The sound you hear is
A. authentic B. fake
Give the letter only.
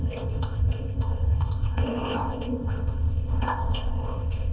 B